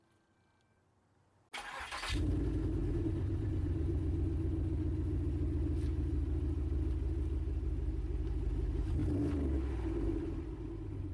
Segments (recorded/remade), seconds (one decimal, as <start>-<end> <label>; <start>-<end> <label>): 0.0-2.8 recorded; 2.8-3.9 remade; 3.9-11.1 recorded